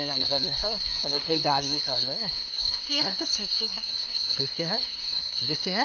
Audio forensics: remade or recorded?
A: remade